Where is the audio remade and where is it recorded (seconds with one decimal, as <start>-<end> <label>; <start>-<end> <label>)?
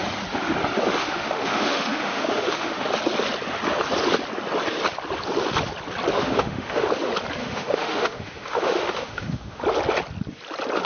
0.0-1.0 recorded; 1.0-2.9 remade; 2.9-6.1 recorded; 6.1-6.8 remade; 6.8-7.4 recorded; 7.4-9.6 remade; 9.6-10.9 recorded